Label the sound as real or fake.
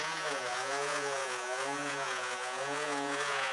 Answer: fake